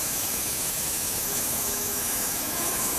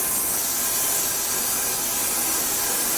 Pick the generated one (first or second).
first